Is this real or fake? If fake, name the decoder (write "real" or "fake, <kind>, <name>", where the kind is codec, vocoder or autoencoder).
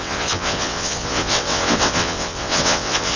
fake, vocoder, WaveNeXt